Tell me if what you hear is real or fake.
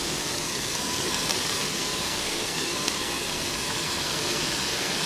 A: fake